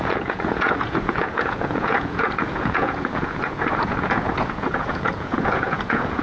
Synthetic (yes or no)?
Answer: yes